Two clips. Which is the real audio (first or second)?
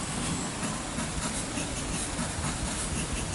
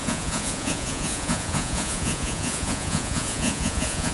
first